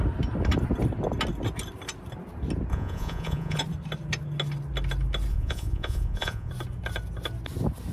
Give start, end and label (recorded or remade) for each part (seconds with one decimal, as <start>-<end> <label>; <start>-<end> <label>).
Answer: 0.0-2.7 recorded; 2.7-3.6 remade; 3.6-5.3 recorded; 5.3-6.5 remade; 6.5-7.9 recorded

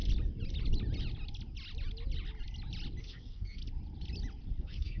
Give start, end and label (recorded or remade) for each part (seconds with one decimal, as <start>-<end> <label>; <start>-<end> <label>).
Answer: 0.0-3.0 recorded; 3.0-3.6 remade; 3.6-4.6 recorded; 4.6-5.0 remade

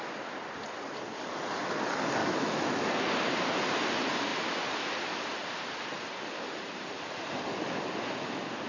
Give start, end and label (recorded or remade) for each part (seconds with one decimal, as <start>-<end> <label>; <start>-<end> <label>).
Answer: 0.0-2.2 recorded; 2.2-2.8 remade; 2.8-8.7 recorded

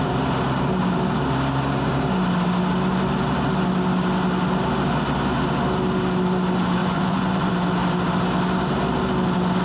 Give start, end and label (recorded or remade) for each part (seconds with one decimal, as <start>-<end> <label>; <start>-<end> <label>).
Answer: 0.0-6.8 recorded; 6.8-7.5 remade; 7.5-9.6 recorded